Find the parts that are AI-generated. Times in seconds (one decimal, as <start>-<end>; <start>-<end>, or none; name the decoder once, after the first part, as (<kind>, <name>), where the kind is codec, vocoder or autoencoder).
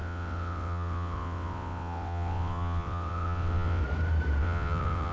0.0-3.8 (vocoder, WaveNeXt); 4.4-5.1